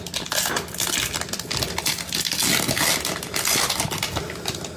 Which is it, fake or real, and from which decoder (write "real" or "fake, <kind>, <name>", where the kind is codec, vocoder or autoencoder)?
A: real